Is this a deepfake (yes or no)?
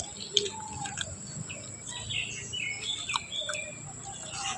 no